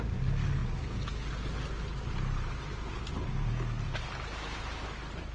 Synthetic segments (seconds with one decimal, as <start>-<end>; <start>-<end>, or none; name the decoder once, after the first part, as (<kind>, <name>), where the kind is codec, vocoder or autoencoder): none